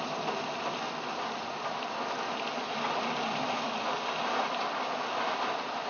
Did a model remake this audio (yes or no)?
no